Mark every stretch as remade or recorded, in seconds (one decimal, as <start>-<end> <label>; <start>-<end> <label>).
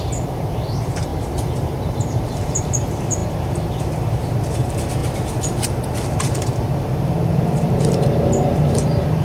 0.0-9.2 remade